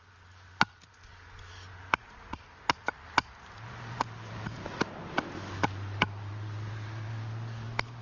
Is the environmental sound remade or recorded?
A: recorded